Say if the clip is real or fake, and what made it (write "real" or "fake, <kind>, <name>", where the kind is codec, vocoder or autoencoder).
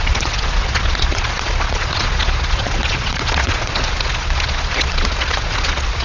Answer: fake, vocoder, Vocos